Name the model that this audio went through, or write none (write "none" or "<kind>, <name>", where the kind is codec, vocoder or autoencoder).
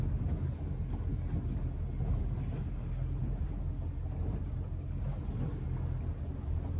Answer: none